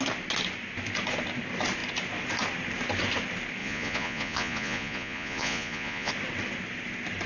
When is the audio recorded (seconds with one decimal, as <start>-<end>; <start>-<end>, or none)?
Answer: 0.0-3.6; 6.1-7.3